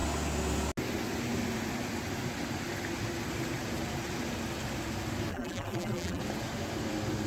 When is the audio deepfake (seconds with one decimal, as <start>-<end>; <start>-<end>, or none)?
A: 5.3-6.2